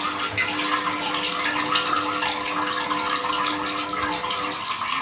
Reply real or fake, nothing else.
real